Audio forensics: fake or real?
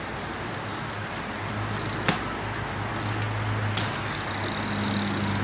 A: real